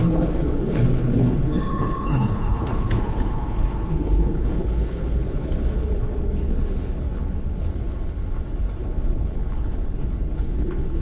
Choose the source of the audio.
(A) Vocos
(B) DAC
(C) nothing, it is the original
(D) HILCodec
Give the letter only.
D